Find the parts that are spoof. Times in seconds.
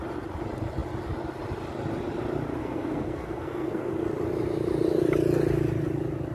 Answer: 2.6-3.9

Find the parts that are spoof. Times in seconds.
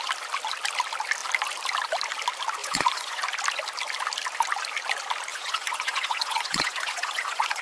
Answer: 2.6-3.2; 5.3-7.6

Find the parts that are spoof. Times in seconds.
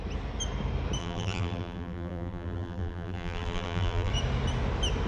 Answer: 1.0-4.1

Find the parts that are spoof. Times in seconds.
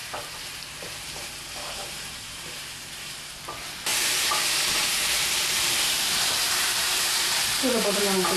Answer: 0.0-3.4; 3.9-7.4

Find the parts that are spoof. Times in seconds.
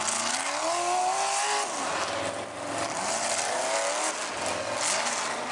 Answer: none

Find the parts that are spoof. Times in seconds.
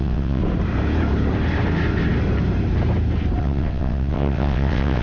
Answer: 0.0-0.4; 3.4-5.0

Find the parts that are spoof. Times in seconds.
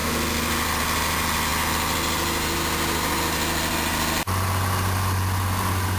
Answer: none